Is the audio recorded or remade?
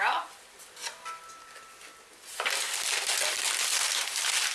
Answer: recorded